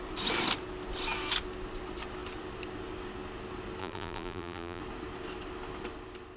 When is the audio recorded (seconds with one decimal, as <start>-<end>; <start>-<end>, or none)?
0.0-3.8; 4.8-6.4